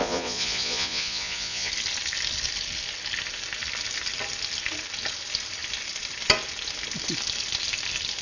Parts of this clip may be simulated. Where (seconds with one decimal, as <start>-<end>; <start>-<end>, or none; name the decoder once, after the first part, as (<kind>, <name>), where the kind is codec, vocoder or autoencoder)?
0.0-1.7 (vocoder, Vocos)